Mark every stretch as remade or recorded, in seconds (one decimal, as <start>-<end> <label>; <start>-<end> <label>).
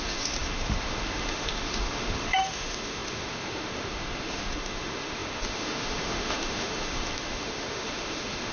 0.0-8.5 remade